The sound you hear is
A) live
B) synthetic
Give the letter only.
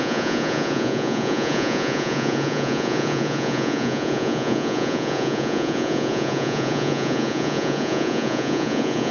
B